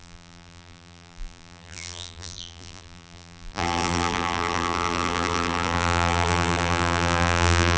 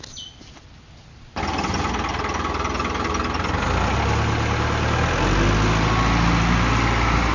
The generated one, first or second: first